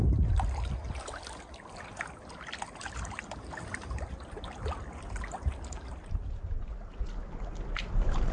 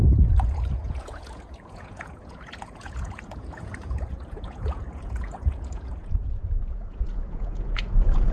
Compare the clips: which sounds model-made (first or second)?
second